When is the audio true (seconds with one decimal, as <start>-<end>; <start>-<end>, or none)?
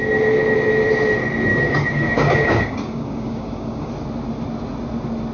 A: 0.0-1.5; 3.9-5.3